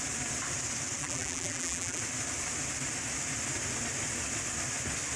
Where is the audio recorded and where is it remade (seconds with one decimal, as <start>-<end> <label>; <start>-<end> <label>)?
0.0-1.0 recorded; 1.0-2.0 remade; 2.0-5.2 recorded